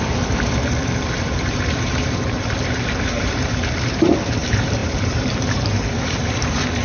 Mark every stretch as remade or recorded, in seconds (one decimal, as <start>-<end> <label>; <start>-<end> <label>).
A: 0.0-6.8 remade